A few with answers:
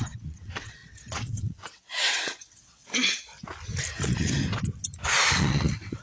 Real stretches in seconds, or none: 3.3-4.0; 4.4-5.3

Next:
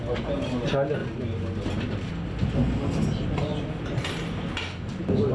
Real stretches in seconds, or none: 0.0-5.3

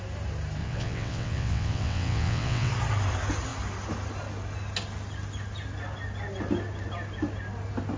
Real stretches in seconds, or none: 0.0-0.6; 2.7-8.0